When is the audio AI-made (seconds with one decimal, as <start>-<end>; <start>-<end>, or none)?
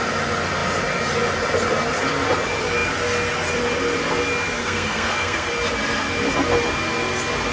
4.6-5.5